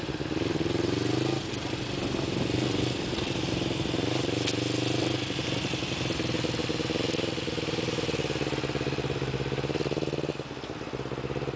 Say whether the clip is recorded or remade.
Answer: recorded